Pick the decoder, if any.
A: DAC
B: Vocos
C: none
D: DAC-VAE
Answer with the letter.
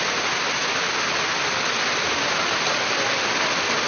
C